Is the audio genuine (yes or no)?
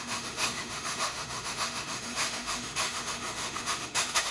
no